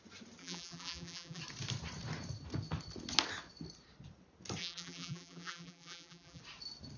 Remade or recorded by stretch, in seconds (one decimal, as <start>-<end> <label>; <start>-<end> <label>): 0.0-0.4 recorded; 0.4-1.4 remade; 1.4-4.6 recorded; 4.6-6.4 remade; 6.4-7.0 recorded